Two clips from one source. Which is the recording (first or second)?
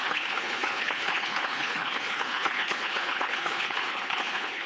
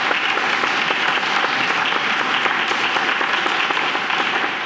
second